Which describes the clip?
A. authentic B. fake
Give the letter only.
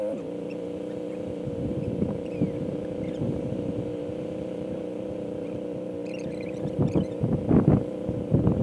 B